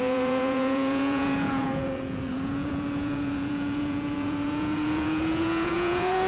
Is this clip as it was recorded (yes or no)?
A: no